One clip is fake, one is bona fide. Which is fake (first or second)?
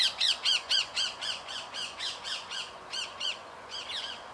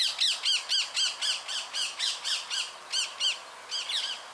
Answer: first